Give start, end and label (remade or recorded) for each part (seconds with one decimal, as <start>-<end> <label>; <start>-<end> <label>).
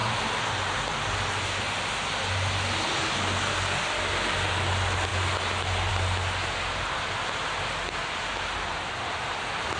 0.0-9.8 recorded